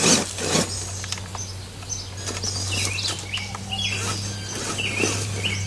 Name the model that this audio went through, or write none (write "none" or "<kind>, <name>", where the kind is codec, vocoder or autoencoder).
none